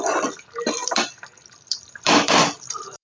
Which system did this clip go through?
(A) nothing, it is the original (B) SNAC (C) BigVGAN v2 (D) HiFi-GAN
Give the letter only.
C